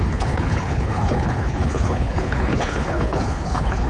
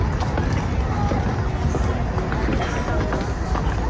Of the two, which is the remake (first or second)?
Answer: first